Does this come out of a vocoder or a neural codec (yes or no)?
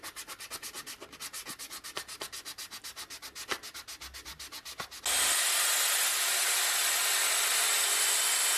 no